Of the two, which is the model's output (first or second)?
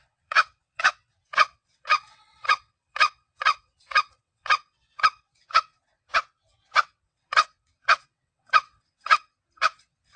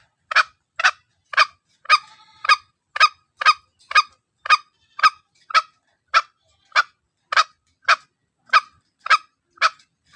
first